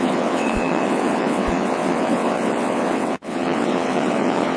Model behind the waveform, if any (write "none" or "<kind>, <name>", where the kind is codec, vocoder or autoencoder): vocoder, WaveNeXt